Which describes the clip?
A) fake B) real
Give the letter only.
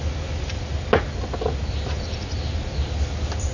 B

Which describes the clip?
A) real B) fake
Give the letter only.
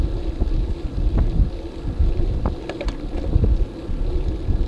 A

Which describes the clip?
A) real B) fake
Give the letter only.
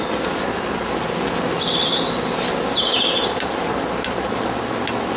A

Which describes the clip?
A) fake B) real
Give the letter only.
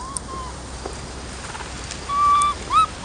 B